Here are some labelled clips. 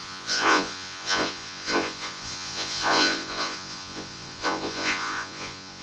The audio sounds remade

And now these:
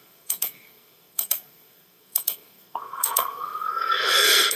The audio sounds remade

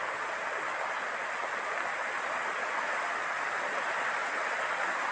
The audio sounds recorded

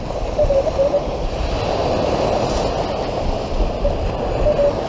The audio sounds recorded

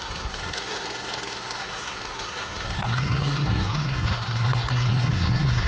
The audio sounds remade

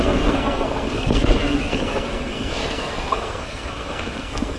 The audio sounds remade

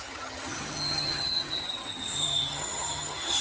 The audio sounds remade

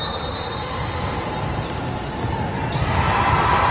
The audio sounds recorded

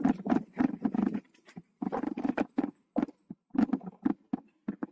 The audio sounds recorded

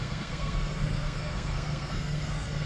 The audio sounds remade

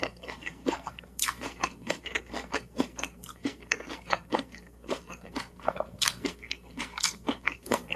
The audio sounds remade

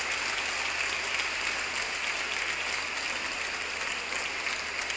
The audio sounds recorded